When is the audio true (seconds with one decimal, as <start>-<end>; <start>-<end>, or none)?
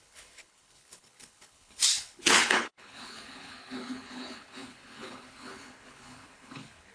none